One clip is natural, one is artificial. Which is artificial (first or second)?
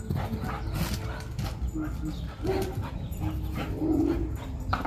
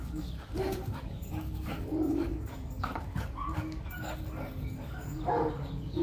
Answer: second